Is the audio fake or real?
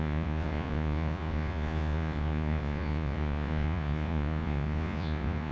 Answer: fake